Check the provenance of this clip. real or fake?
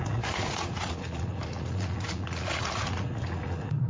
fake